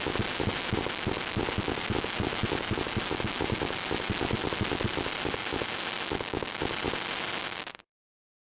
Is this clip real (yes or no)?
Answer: yes